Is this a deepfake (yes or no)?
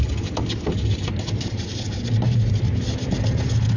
no